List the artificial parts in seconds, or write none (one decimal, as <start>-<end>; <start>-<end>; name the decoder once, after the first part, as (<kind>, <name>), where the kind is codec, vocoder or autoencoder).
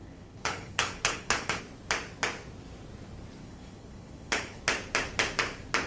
0.0-1.6 (codec, HILCodec); 3.4-4.6